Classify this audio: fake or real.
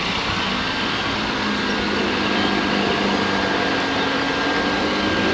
real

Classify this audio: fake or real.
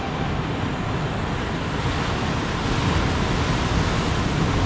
real